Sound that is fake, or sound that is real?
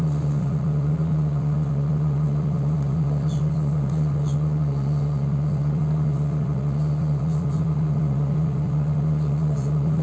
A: fake